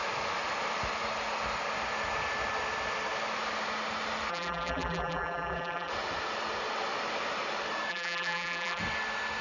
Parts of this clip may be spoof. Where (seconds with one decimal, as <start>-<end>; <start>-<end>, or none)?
4.3-5.9; 7.9-8.8